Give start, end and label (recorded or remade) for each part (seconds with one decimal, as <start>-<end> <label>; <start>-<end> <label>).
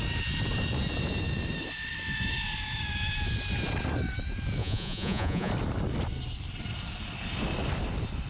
0.0-4.6 recorded; 4.6-5.5 remade; 5.5-8.3 recorded